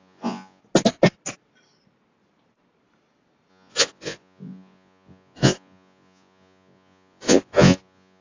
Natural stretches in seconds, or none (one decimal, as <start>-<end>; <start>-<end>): 0.6-3.5